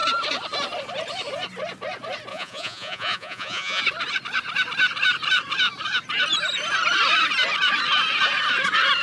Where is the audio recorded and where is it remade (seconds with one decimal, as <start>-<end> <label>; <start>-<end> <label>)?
0.0-2.3 recorded; 2.3-3.8 remade; 3.8-9.0 recorded